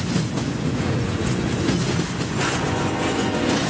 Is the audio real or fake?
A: fake